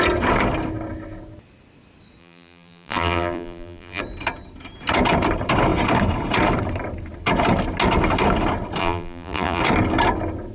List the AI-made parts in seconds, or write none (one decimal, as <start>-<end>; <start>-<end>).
2.2-4.0; 8.8-9.6